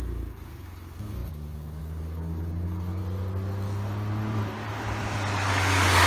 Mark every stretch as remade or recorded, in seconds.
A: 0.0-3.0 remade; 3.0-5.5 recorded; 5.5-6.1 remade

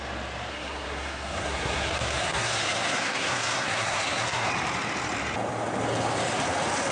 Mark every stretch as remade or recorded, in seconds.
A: 0.0-0.5 recorded; 0.5-4.5 remade; 4.5-6.9 recorded

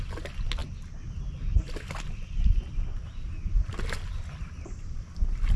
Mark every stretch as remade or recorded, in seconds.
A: 0.0-5.6 recorded

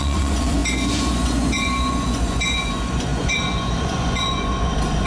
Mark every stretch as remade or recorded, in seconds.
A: 0.0-5.1 remade